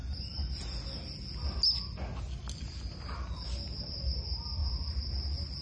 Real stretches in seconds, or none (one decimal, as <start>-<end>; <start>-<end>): 0.4-3.8